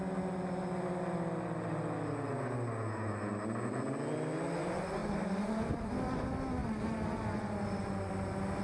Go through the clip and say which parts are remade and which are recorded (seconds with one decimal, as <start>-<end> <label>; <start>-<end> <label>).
0.0-8.6 recorded